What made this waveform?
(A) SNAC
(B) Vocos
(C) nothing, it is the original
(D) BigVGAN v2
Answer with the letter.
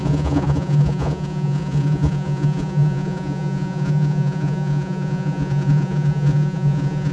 B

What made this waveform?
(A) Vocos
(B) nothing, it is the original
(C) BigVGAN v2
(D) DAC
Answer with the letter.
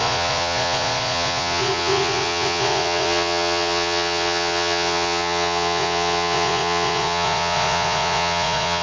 A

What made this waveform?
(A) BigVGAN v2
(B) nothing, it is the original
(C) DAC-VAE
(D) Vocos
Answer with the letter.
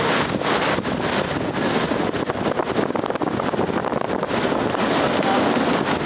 B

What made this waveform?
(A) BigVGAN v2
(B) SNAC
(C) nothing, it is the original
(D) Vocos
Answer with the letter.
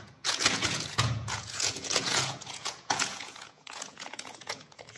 D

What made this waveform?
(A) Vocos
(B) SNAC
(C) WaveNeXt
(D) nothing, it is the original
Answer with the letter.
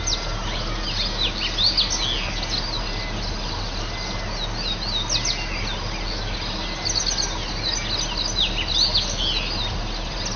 D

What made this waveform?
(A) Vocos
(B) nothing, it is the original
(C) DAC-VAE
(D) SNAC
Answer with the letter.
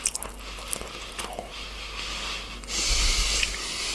B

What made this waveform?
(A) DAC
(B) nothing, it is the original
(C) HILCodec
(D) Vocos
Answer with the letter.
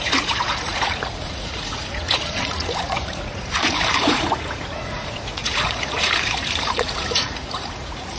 D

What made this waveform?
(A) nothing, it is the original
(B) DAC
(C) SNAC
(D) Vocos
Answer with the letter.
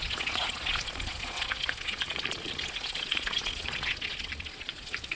D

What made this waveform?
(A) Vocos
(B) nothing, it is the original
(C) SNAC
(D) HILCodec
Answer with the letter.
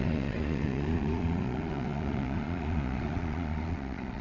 A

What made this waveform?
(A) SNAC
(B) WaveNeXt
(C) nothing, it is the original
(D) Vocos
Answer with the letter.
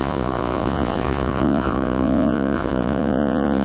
D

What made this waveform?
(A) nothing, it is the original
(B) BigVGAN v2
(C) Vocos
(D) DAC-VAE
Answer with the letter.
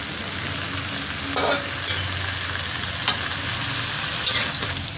A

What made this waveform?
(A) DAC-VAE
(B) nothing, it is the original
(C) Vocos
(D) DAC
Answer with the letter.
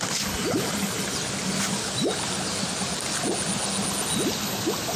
B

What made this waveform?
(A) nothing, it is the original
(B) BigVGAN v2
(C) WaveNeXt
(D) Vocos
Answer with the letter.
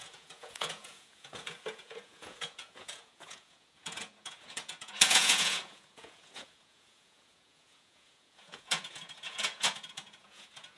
D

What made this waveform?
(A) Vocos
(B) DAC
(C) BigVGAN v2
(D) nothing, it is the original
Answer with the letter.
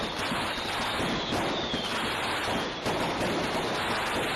D